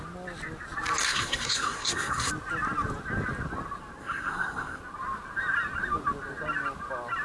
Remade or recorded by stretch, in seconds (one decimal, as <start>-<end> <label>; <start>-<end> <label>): 0.0-1.0 recorded; 1.0-2.3 remade; 2.3-4.0 recorded; 4.0-4.8 remade; 4.8-7.2 recorded